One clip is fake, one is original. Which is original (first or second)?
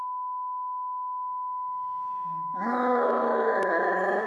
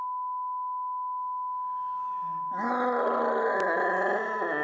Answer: second